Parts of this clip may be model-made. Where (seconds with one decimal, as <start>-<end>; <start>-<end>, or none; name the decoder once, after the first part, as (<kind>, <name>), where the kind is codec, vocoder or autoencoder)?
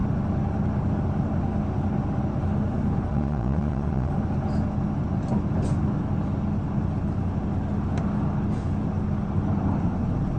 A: 3.1-4.1 (vocoder, Vocos)